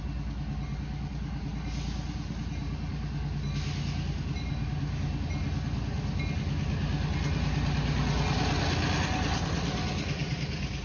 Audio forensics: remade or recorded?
recorded